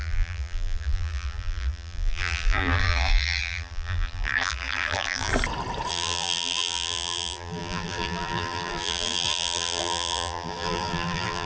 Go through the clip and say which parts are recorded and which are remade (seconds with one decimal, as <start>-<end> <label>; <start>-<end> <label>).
0.0-5.3 remade; 5.3-5.9 recorded; 5.9-11.5 remade